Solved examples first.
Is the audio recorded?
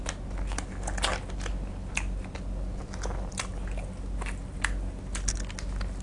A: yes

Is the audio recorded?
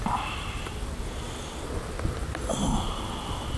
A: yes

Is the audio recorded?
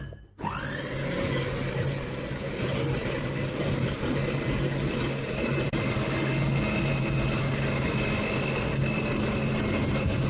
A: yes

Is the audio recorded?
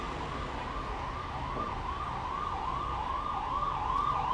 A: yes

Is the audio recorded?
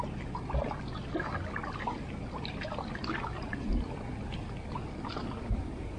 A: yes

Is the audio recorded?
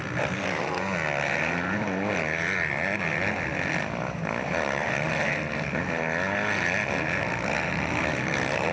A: yes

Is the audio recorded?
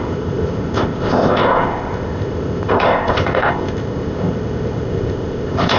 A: no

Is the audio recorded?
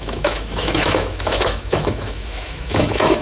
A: no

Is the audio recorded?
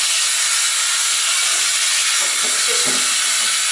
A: yes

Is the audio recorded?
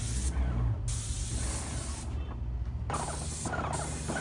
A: yes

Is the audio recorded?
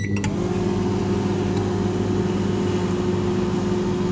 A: yes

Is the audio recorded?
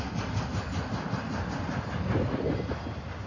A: yes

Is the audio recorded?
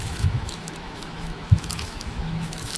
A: no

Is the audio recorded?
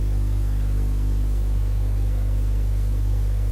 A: no